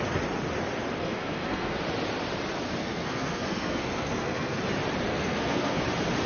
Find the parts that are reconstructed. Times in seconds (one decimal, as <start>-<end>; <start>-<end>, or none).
1.0-1.8; 2.8-4.6; 5.1-5.8